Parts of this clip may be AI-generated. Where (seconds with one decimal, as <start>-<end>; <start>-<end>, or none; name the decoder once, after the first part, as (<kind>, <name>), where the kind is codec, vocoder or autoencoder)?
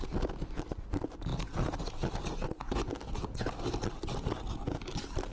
none